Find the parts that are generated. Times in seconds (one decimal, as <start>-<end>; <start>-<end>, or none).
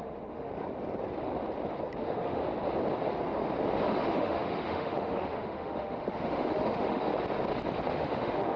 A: 0.0-0.5; 2.0-2.4; 3.9-7.1; 7.9-8.6